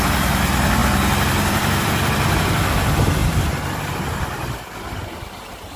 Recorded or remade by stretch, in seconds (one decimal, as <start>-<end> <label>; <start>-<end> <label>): 0.0-0.8 recorded; 0.8-2.7 remade; 2.7-3.2 recorded; 3.2-3.8 remade; 3.8-5.8 recorded